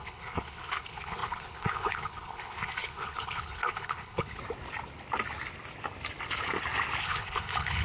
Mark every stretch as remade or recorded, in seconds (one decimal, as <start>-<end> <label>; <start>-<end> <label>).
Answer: 0.0-4.4 remade; 4.4-7.0 recorded; 7.0-7.8 remade